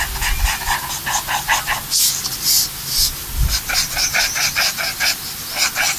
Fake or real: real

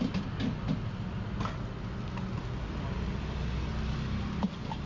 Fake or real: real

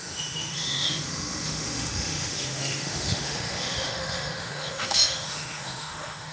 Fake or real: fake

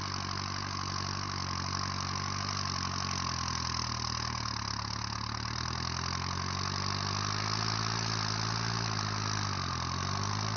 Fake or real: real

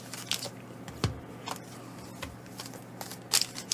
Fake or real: real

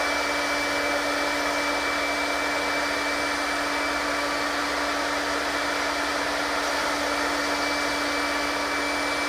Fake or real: real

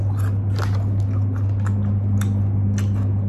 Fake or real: real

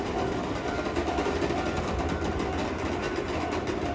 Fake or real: real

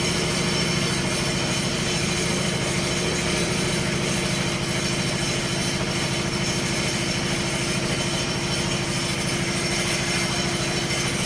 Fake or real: real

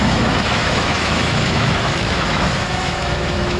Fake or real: fake